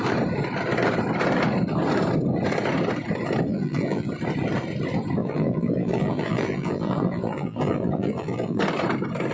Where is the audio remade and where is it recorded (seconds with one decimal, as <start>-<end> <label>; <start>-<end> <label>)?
0.0-3.5 recorded; 3.5-4.1 remade; 4.1-5.2 recorded; 5.2-8.6 remade; 8.6-9.3 recorded